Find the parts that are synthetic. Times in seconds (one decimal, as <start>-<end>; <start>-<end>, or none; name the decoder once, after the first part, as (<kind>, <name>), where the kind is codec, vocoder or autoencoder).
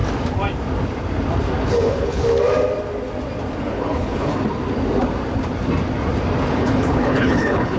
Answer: 1.7-2.2 (codec, HILCodec); 3.6-4.3; 6.5-7.8